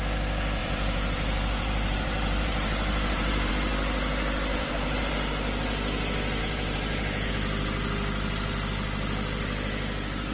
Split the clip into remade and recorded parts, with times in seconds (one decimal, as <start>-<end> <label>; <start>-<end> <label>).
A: 0.0-0.6 recorded; 0.6-3.5 remade; 3.5-4.5 recorded; 4.5-5.1 remade; 5.1-6.4 recorded; 6.4-7.3 remade; 7.3-10.3 recorded